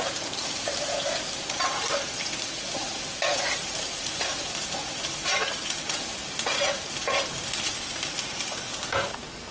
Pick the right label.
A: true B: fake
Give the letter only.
B